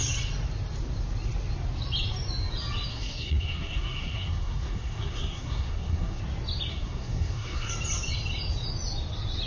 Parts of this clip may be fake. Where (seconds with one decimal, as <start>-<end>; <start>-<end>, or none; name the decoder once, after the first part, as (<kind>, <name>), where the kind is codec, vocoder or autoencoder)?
2.9-6.2 (codec, SNAC); 6.7-7.7